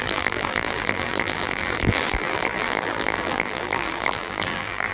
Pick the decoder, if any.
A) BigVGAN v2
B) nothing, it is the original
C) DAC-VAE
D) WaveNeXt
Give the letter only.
A